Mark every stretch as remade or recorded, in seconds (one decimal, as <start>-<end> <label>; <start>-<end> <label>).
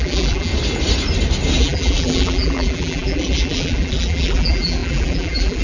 0.0-0.5 remade; 0.5-1.6 recorded; 1.6-5.6 remade